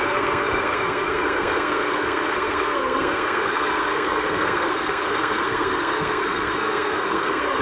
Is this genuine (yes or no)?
no